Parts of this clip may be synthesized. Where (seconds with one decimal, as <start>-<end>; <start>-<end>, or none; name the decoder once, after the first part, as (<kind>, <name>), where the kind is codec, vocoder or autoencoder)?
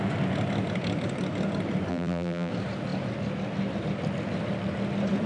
1.9-2.5 (vocoder, BigVGAN v2)